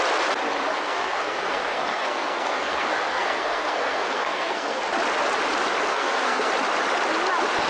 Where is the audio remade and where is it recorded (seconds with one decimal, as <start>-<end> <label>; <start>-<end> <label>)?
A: 0.0-0.7 recorded; 0.7-4.8 remade; 4.8-5.9 recorded; 5.9-6.5 remade; 6.5-7.7 recorded